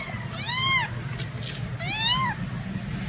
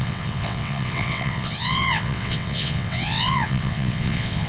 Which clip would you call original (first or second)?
first